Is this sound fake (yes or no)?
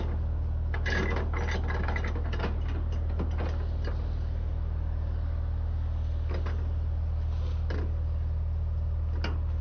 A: no